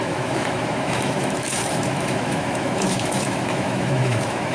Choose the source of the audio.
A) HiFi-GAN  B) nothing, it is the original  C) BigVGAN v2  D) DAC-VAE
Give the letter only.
D